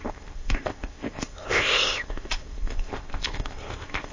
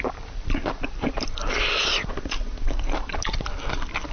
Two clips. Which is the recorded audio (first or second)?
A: second